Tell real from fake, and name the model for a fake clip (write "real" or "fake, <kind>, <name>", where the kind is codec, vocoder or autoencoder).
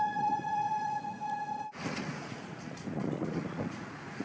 fake, vocoder, Vocos